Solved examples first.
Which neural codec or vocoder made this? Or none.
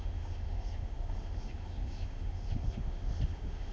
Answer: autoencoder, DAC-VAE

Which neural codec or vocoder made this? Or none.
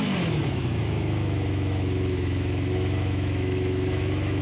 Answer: autoencoder, DAC-VAE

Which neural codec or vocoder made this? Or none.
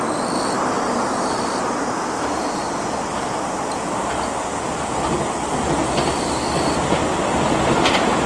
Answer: none